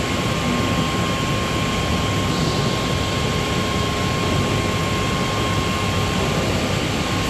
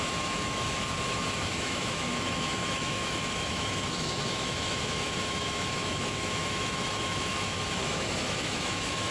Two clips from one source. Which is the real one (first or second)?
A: first